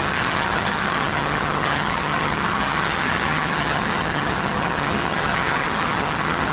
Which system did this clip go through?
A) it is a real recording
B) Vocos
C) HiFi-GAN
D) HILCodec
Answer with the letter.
C